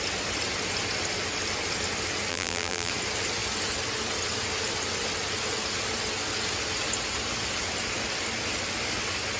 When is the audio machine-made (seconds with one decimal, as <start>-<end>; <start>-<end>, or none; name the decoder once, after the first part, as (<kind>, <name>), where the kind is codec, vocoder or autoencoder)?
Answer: 2.3-2.9 (vocoder, BigVGAN v2)